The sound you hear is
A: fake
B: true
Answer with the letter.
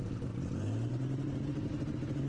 B